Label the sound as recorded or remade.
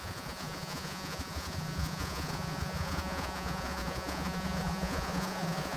remade